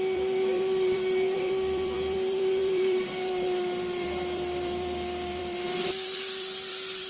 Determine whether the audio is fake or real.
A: fake